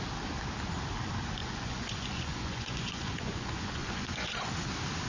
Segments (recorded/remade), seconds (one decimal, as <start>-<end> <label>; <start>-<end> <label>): 0.0-1.4 recorded; 1.4-4.5 remade; 4.5-5.1 recorded